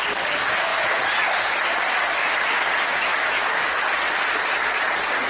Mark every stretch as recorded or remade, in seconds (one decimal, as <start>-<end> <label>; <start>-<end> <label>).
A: 0.0-3.1 recorded; 3.1-3.8 remade; 3.8-5.3 recorded